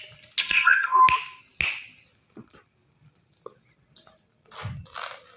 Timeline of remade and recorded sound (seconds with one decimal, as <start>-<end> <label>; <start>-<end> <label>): 0.0-0.4 recorded; 0.4-1.0 remade; 1.0-5.4 recorded